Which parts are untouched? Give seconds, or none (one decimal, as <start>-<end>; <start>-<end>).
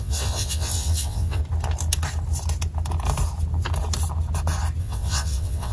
1.4-4.8